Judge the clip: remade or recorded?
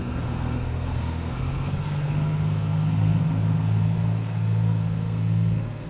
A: remade